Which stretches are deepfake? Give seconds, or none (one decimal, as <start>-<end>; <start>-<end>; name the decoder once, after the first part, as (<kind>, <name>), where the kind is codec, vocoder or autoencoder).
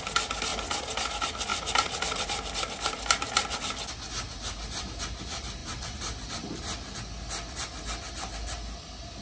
none